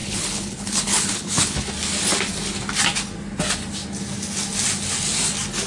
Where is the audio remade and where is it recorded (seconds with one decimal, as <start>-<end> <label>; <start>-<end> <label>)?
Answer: 0.0-1.7 remade; 1.7-5.7 recorded